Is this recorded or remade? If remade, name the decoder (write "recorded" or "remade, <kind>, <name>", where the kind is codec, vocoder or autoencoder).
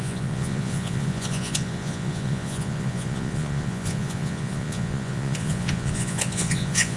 remade, vocoder, Vocos